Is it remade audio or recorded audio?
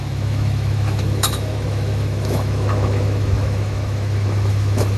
remade